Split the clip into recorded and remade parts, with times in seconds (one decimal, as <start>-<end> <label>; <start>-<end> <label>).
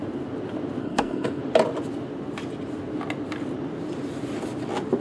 0.0-0.8 recorded; 0.8-1.4 remade; 1.4-5.0 recorded